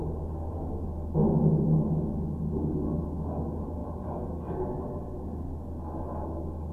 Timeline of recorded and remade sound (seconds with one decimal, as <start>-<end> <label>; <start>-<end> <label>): 0.0-3.8 recorded; 3.8-4.3 remade; 4.3-6.7 recorded